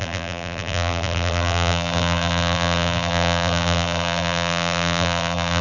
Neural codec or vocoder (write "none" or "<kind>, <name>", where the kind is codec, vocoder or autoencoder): vocoder, BigVGAN v2